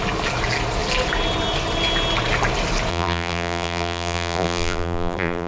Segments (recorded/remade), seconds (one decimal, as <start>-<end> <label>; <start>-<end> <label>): 0.0-2.9 recorded; 2.9-5.5 remade